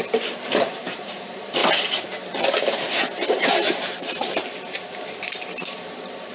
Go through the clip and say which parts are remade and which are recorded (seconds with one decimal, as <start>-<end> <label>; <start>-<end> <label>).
0.0-1.6 remade; 1.6-2.5 recorded; 2.5-4.4 remade; 4.4-4.9 recorded; 4.9-6.3 remade